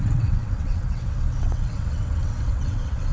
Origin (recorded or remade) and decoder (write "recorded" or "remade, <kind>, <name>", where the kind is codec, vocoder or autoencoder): remade, vocoder, WaveNeXt